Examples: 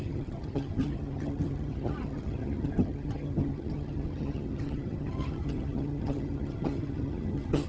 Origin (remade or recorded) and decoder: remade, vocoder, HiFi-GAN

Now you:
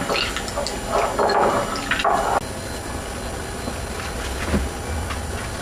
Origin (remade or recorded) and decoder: recorded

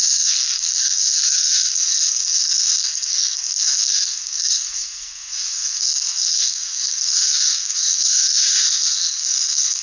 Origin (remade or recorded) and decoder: remade, codec, SNAC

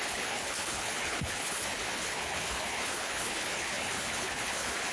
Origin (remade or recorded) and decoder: remade, codec, HILCodec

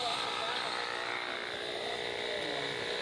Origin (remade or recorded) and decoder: recorded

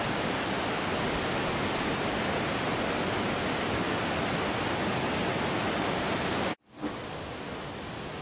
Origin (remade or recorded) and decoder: recorded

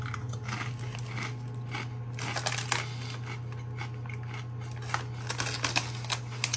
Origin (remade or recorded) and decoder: recorded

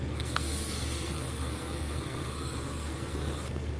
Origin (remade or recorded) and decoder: remade, codec, SNAC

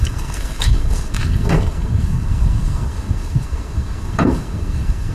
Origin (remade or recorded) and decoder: remade, codec, SNAC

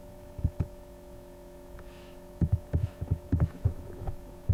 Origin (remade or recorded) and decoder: remade, autoencoder, DAC-VAE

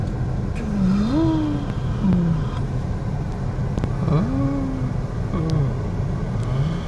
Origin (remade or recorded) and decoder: recorded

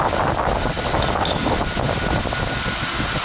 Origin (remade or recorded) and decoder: recorded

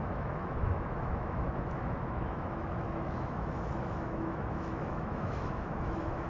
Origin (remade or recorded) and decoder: remade, autoencoder, DAC-VAE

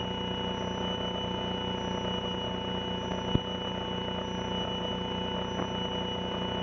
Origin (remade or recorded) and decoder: recorded